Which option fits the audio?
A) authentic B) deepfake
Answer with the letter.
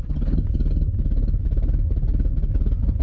A